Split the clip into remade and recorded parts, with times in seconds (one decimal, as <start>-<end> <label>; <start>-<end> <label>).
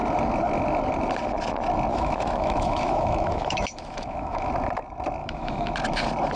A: 0.0-1.9 recorded; 1.9-4.5 remade; 4.5-5.2 recorded; 5.2-5.7 remade; 5.7-6.4 recorded